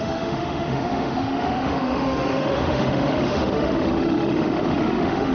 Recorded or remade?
remade